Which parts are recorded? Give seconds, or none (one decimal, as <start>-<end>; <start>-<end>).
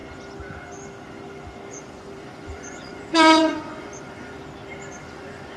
0.0-1.7; 4.4-5.0